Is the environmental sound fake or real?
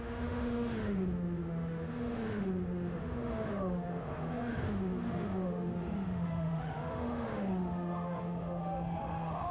fake